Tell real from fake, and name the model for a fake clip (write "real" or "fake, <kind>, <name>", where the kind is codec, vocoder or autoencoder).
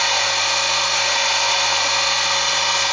real